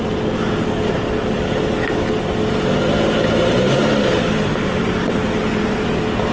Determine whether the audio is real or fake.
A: real